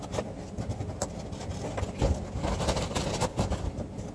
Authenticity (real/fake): real